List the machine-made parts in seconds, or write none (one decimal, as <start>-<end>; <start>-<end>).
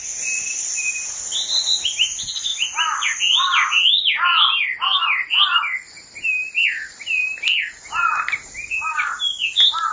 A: none